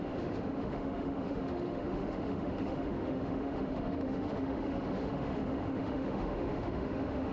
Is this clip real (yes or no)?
no